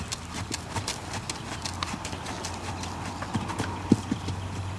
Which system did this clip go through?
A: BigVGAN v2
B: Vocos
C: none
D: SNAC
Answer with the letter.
C